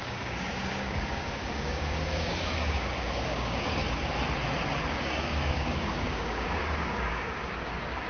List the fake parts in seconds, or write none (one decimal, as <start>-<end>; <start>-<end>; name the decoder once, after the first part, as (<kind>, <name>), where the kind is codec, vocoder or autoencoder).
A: 0.0-3.8 (codec, DAC); 4.9-8.1

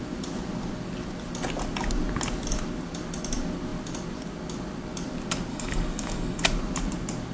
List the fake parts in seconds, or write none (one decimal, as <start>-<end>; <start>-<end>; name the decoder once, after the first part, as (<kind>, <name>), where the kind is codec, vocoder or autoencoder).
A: 5.5-6.4 (codec, DAC)

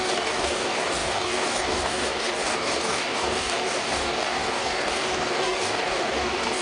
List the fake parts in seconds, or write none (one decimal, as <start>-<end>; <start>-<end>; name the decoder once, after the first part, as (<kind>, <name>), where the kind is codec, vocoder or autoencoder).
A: 0.0-6.6 (codec, DAC)